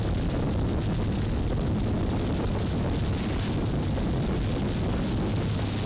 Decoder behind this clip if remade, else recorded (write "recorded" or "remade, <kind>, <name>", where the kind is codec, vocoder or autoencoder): recorded